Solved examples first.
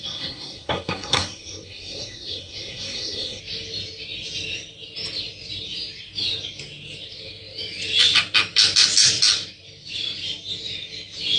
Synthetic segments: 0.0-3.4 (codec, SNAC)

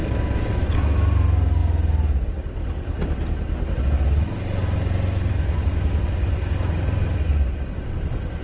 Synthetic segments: none

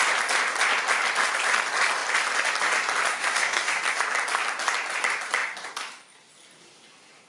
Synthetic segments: 3.1-3.8 (codec, SNAC)